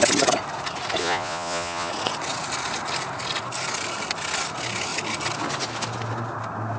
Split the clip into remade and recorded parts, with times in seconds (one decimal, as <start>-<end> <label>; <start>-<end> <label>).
0.0-1.0 recorded; 1.0-1.9 remade; 1.9-6.8 recorded